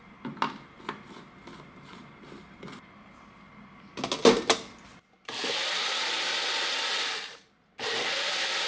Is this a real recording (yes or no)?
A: yes